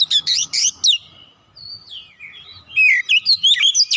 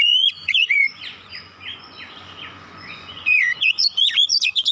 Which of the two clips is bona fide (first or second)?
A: first